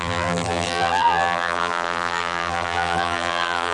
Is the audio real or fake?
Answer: fake